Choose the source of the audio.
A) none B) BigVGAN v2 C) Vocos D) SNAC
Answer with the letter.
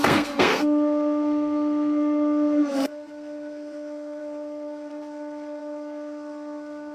D